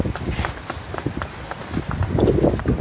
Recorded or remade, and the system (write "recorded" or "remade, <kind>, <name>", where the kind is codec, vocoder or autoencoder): recorded